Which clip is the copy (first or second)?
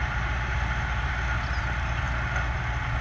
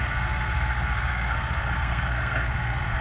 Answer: second